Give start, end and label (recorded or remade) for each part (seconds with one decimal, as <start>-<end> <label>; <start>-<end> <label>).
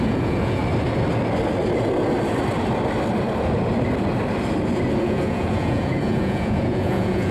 0.0-0.6 remade; 0.6-5.0 recorded; 5.0-7.3 remade